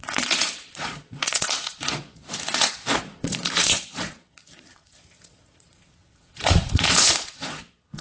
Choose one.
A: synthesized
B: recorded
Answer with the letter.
A